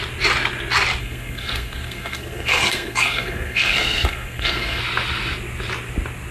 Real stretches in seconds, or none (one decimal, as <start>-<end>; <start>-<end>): 0.0-1.0; 4.8-6.3